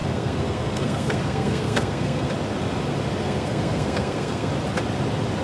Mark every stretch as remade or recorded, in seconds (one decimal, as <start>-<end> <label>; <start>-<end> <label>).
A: 0.0-2.3 remade; 2.3-3.2 recorded; 3.2-4.5 remade; 4.5-5.4 recorded